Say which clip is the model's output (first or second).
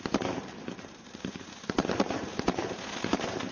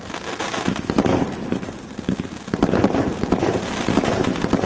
first